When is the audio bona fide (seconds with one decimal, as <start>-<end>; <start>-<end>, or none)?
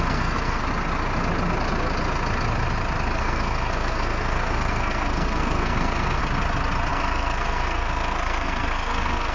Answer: 0.6-3.2; 6.2-6.9